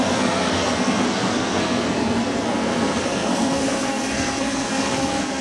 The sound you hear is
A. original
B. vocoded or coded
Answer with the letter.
B